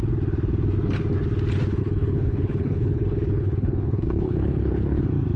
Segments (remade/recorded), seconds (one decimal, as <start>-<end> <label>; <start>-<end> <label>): 0.0-1.8 recorded; 1.8-5.0 remade; 5.0-5.4 recorded